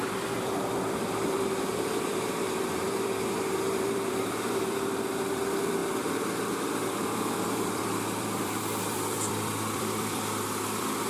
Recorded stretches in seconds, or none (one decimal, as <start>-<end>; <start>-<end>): none